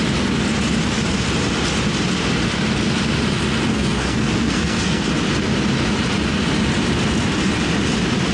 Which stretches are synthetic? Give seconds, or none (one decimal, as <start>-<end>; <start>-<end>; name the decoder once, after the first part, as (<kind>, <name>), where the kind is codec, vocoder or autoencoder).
3.7-5.1 (codec, SNAC)